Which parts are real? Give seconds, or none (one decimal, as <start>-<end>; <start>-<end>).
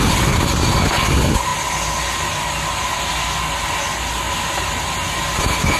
0.0-5.8